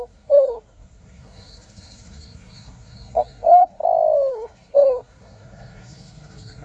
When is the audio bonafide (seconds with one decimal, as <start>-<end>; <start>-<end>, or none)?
3.8-4.3